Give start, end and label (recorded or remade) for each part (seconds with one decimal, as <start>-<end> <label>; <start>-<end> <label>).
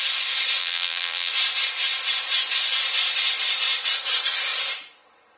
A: 0.0-0.6 recorded; 0.6-1.3 remade; 1.3-5.4 recorded